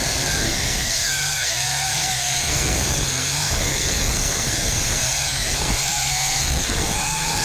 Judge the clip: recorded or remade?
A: remade